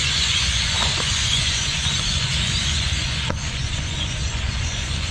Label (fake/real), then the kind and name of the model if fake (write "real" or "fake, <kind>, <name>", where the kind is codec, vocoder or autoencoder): fake, vocoder, Vocos